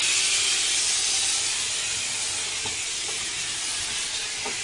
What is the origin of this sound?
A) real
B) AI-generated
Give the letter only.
A